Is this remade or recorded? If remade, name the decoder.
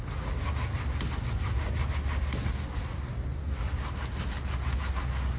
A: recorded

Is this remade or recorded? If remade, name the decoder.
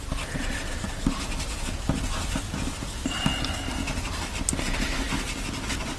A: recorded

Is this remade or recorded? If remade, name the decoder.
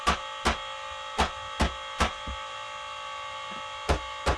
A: recorded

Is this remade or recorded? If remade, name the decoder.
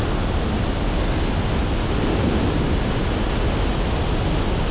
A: recorded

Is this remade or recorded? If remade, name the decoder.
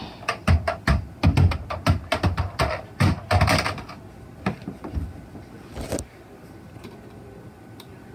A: recorded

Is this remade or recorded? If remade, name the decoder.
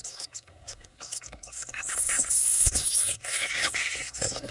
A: remade, codec, SNAC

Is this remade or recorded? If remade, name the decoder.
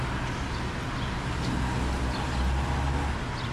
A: recorded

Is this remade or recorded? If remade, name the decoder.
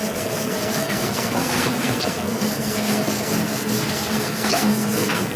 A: remade, codec, SNAC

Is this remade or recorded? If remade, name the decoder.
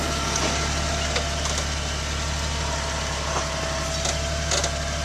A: recorded